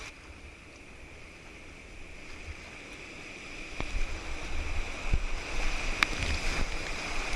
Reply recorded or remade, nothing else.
recorded